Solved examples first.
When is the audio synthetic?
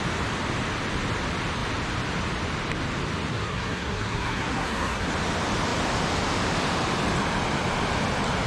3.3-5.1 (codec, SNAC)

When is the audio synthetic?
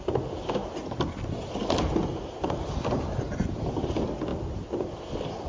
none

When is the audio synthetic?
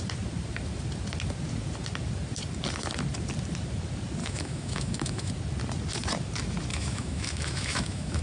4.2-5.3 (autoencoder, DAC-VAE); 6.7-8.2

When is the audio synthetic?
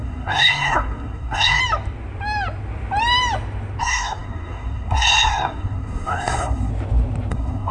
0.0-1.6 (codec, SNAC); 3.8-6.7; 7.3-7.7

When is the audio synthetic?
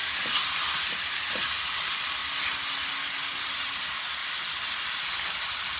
none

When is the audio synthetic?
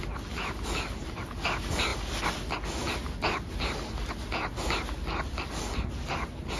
none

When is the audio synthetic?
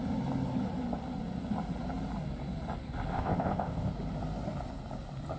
3.1-3.9 (codec, ZipCodec)